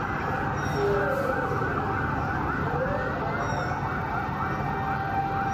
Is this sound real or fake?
real